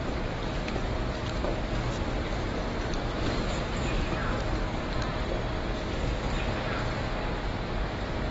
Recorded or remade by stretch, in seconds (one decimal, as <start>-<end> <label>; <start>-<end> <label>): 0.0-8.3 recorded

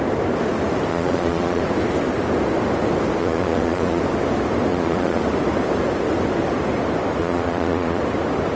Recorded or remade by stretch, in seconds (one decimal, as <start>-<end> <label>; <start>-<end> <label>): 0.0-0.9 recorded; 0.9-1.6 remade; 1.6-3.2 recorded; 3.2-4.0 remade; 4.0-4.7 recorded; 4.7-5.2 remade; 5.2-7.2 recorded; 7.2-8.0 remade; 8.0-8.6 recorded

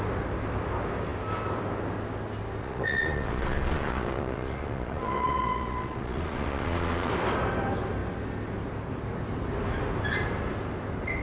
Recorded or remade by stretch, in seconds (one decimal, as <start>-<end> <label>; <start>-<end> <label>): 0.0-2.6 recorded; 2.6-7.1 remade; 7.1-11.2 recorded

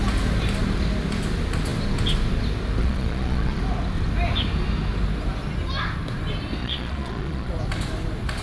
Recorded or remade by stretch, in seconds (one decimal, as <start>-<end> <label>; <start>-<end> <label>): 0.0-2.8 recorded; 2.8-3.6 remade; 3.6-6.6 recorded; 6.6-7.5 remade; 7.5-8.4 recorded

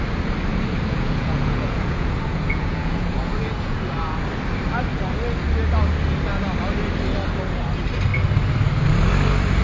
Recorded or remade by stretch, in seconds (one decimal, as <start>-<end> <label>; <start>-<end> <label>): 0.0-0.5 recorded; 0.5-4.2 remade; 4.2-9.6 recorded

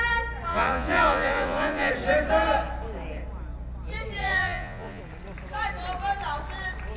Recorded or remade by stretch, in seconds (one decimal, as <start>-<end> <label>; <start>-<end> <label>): 0.0-0.5 recorded; 0.5-1.9 remade; 1.9-4.2 recorded; 4.2-5.0 remade; 5.0-7.0 recorded

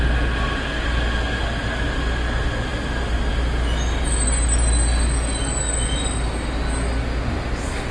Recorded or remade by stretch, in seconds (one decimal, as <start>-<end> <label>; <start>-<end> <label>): 0.0-7.9 recorded

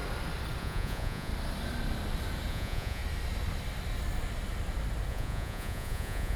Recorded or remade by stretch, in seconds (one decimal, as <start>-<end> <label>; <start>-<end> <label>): 0.0-0.6 recorded; 0.6-1.3 remade; 1.3-2.5 recorded; 2.5-3.0 remade; 3.0-5.1 recorded; 5.1-6.4 remade